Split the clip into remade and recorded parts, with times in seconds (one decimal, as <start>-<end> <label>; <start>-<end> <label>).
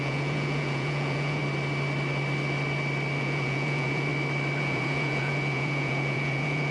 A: 0.0-1.4 remade; 1.4-3.2 recorded; 3.2-4.1 remade; 4.1-4.6 recorded; 4.6-6.7 remade